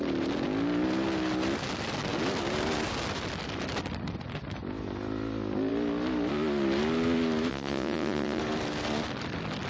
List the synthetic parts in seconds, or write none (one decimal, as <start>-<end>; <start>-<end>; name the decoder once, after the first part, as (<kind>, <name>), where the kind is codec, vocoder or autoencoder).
7.5-8.4 (vocoder, Vocos)